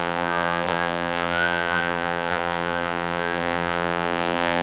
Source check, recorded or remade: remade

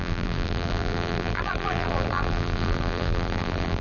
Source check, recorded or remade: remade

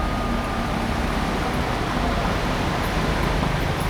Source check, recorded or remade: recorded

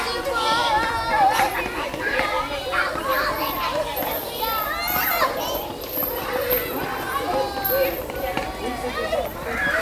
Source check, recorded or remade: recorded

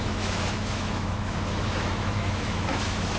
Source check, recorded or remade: remade